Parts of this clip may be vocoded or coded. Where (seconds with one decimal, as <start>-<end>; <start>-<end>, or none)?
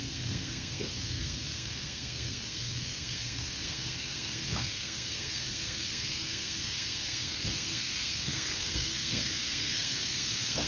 0.0-10.7